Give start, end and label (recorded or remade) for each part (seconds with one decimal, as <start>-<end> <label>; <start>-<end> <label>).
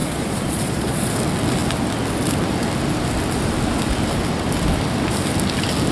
0.0-1.1 remade; 1.1-5.9 recorded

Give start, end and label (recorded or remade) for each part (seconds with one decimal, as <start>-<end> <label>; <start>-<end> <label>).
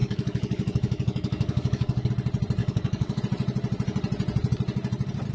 0.0-2.1 remade; 2.1-2.6 recorded; 2.6-3.2 remade; 3.2-5.3 recorded